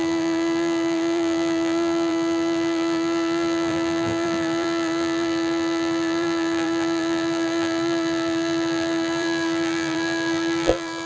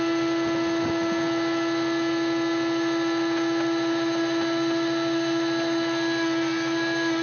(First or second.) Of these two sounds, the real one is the second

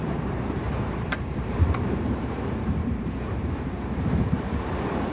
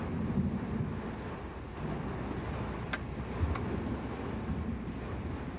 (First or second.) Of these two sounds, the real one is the second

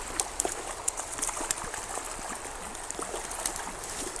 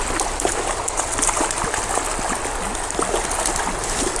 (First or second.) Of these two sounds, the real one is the second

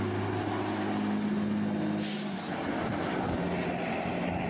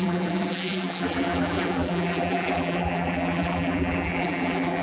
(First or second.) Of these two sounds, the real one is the first